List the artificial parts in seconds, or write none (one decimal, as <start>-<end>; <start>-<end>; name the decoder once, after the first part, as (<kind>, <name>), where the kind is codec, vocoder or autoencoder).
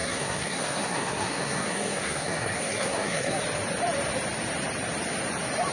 0.0-3.4 (codec, SNAC)